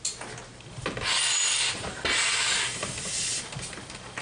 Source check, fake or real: real